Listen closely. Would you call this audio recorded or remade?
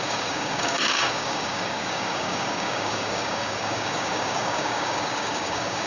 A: remade